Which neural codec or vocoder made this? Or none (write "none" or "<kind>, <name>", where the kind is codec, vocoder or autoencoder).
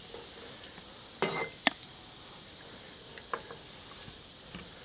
none